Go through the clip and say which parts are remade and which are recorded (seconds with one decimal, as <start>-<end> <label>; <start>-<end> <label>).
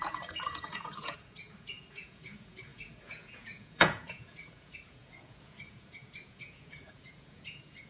0.0-7.9 remade